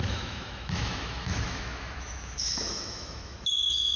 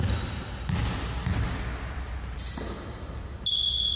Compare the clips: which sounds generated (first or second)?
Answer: first